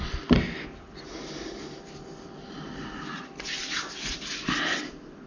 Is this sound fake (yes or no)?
no